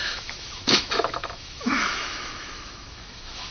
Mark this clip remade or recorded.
remade